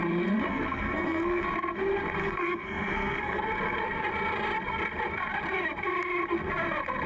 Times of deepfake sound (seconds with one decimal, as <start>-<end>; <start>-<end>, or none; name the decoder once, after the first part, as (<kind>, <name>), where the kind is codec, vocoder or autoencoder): 0.5-1.4 (codec, SNAC); 2.2-3.4